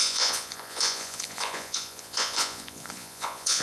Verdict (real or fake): fake